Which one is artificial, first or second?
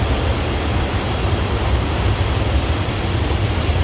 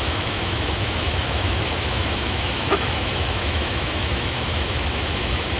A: second